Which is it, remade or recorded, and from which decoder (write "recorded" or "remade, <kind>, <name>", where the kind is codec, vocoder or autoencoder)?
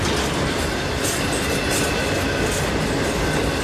recorded